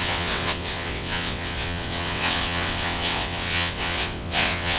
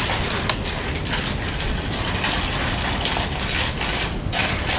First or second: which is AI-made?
first